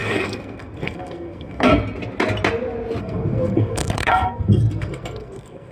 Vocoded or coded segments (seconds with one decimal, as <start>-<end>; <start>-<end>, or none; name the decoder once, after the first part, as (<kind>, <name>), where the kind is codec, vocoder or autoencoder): 0.0-1.7 (codec, SNAC); 3.0-5.7

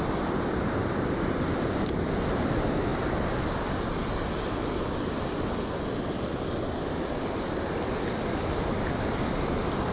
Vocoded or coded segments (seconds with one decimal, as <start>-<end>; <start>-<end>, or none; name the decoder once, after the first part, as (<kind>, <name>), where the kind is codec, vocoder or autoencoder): none

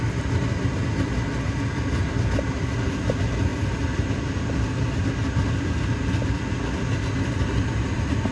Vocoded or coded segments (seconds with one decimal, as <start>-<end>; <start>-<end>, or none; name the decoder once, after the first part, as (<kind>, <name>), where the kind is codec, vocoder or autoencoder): none

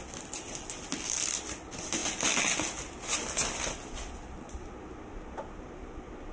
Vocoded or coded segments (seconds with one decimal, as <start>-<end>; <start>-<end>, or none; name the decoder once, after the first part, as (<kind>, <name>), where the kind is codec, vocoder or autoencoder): none

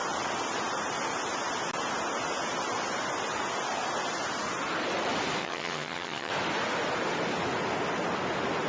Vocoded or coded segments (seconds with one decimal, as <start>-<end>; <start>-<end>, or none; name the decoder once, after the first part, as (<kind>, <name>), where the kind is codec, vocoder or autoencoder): 5.4-6.3 (vocoder, HiFi-GAN)

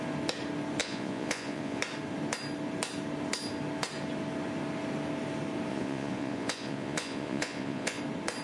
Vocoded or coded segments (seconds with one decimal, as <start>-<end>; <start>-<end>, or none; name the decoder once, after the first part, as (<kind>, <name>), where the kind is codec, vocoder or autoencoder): 0.8-1.8 (vocoder, Vocos); 5.7-8.0

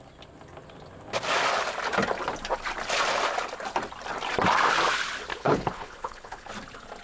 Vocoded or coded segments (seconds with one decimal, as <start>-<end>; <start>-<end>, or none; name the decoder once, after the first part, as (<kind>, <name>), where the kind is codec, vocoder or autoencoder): 5.3-6.5 (codec, HILCodec)